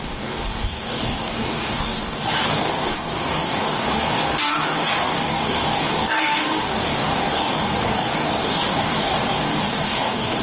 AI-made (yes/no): yes